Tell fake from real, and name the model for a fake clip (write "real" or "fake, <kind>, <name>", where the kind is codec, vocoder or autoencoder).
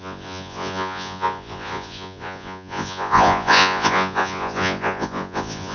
fake, vocoder, Vocos